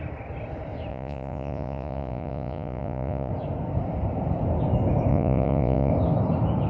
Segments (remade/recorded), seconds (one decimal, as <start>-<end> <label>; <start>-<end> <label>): 0.0-0.9 recorded; 0.9-3.3 remade; 3.3-5.1 recorded; 5.1-5.9 remade; 5.9-6.7 recorded